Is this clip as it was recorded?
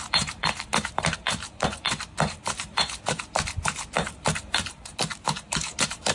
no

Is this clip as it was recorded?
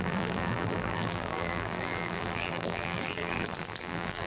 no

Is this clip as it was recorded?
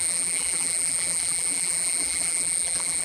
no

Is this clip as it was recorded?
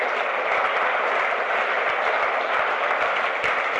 no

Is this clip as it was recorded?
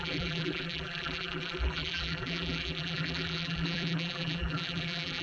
no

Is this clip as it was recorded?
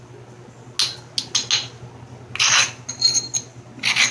yes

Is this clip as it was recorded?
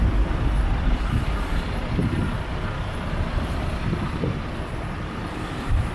no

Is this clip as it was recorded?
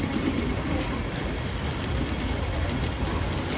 yes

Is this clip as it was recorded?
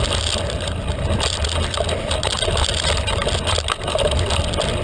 yes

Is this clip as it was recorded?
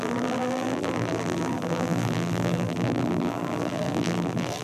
no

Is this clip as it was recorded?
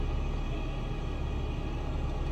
yes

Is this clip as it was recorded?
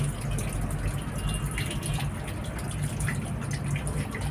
yes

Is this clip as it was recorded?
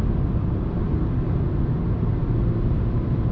no